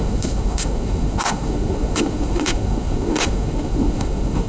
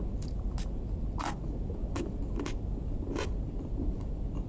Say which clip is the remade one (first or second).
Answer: first